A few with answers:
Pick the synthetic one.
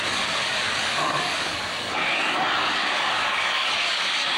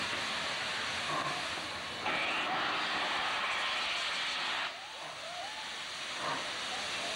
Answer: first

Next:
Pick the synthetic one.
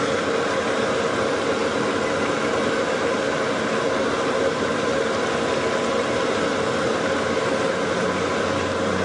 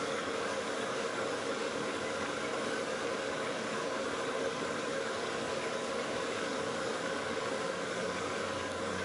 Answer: second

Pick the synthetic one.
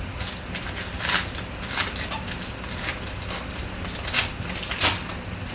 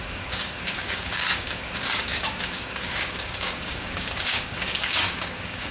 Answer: second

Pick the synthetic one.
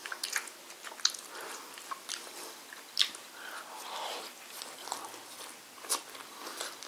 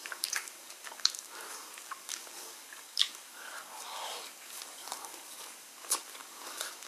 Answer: second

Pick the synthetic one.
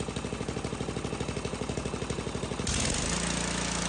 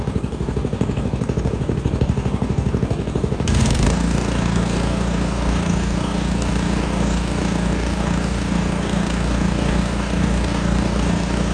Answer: second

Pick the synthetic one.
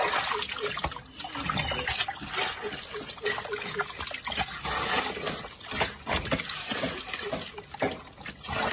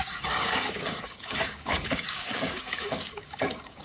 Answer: second